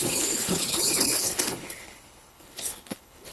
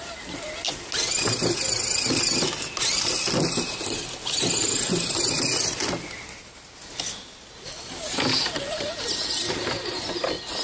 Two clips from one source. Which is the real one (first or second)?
second